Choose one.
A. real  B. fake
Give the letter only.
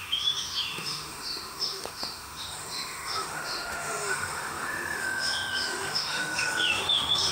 B